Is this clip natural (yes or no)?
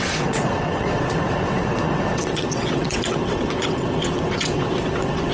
no